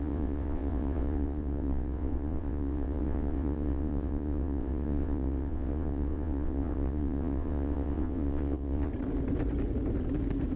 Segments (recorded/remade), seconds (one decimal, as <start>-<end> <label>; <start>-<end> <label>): 0.0-8.9 remade; 8.9-10.6 recorded